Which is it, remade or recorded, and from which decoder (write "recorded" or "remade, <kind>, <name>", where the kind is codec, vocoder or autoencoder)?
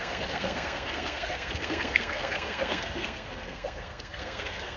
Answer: remade, codec, SNAC